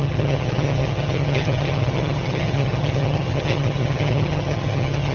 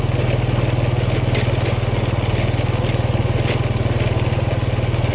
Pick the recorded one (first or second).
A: second